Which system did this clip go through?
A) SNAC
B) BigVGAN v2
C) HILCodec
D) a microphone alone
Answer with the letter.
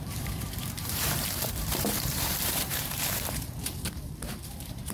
B